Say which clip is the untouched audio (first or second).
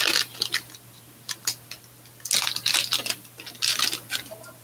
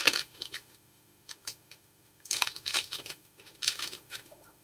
first